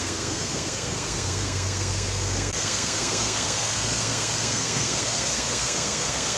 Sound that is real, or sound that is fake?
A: fake